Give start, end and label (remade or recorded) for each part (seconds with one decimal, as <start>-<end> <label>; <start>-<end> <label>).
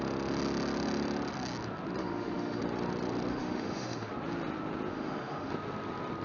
0.0-2.0 recorded; 2.0-2.6 remade; 2.6-3.3 recorded; 3.3-4.1 remade; 4.1-4.9 recorded; 4.9-5.5 remade; 5.5-6.2 recorded